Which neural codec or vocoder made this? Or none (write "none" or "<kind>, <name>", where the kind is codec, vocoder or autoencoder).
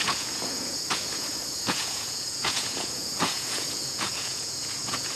vocoder, Vocos